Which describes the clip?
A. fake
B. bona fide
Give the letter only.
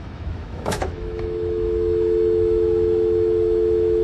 A